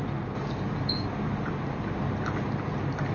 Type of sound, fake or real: real